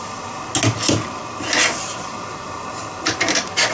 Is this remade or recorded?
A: recorded